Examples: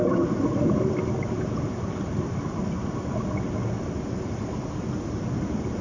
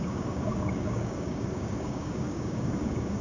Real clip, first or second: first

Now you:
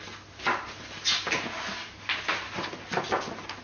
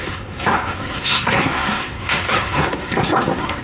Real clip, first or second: first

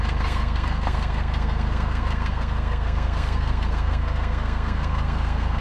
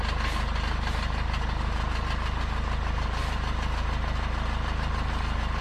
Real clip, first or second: second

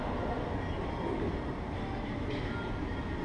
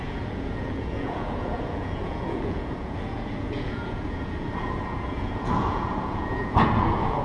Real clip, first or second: first